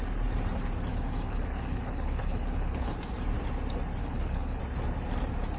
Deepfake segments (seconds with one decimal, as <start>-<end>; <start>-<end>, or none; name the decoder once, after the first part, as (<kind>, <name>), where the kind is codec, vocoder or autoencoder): 0.9-2.9 (codec, HILCodec); 4.0-4.6

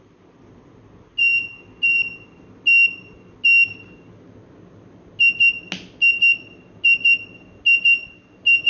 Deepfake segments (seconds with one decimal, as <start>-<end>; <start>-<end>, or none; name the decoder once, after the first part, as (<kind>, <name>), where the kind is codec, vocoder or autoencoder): none

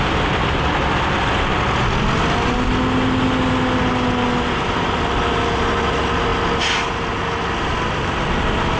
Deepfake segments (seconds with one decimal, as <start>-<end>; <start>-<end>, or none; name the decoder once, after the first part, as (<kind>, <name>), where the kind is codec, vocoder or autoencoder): none

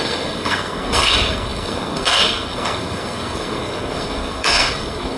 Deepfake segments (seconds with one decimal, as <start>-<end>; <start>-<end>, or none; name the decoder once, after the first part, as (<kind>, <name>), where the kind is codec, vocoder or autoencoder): 0.0-5.2 (codec, SNAC)

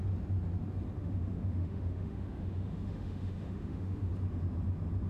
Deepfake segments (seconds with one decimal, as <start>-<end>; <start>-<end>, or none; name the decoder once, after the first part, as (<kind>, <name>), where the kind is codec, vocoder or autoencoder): 1.0-4.1 (autoencoder, DAC-VAE)

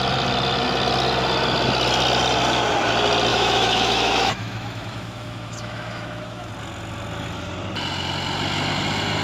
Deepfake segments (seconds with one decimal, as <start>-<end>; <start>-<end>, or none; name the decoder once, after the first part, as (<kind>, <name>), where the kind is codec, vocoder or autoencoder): 3.3-6.5 (autoencoder, DAC-VAE)